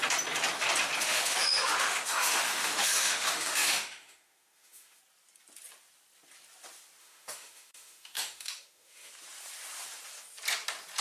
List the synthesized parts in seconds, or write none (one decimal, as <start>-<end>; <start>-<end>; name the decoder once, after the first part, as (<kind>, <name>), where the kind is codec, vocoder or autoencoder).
1.0-5.0 (autoencoder, DAC-VAE); 7.0-9.1